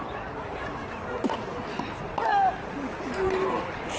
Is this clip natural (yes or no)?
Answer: yes